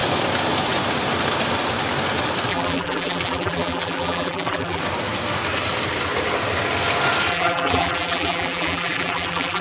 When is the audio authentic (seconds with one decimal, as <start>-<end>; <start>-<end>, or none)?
0.0-2.5; 4.8-7.3